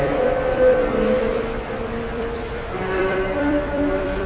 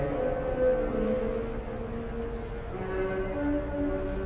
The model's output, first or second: first